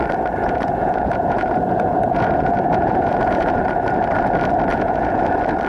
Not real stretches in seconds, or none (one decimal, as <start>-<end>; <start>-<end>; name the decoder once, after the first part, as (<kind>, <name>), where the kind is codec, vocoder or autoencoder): 0.4-3.6 (vocoder, Vocos); 4.7-5.2